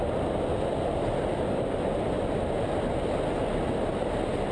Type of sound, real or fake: real